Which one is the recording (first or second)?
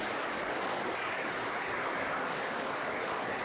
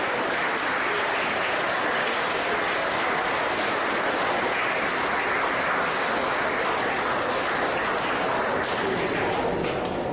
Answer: second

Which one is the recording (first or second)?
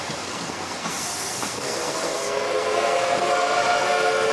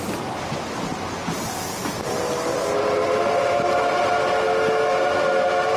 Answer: second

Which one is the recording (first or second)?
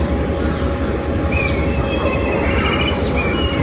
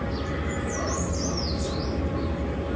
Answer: second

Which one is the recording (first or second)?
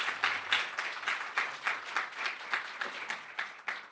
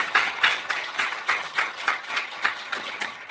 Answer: first